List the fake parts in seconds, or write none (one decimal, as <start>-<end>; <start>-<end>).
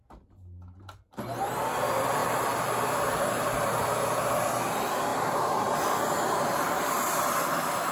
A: 2.2-3.7; 5.1-5.8